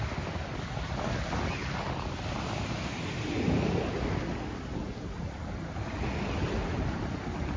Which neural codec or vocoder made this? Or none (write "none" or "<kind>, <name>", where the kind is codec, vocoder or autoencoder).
none